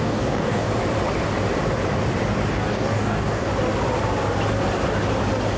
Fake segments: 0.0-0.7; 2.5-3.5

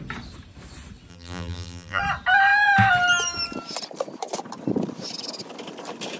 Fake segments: 1.1-2.0

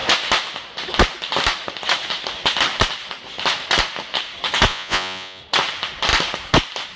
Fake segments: 4.7-5.4

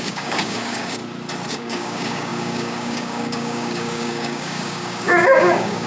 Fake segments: 0.0-1.0; 1.5-5.9